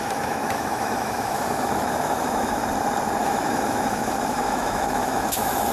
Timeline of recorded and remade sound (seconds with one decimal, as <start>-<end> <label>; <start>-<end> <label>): 0.0-2.6 remade; 2.6-3.2 recorded; 3.2-5.7 remade